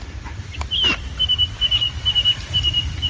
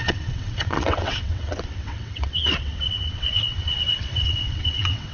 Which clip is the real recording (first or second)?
first